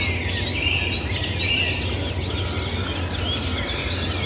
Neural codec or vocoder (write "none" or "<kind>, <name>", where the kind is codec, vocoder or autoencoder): none